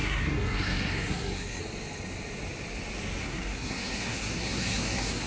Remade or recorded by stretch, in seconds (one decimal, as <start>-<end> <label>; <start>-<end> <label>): 0.0-1.6 remade; 1.6-3.2 recorded; 3.2-5.3 remade